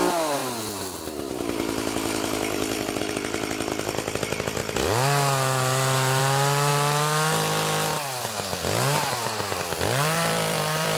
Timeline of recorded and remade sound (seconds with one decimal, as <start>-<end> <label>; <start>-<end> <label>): 0.0-0.4 remade; 0.4-3.0 recorded; 3.0-4.6 remade; 4.6-6.2 recorded; 6.2-6.7 remade; 6.7-9.1 recorded; 9.1-11.0 remade